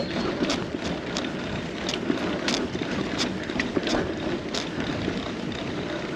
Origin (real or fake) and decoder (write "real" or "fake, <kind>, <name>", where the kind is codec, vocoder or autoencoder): fake, vocoder, BigVGAN v2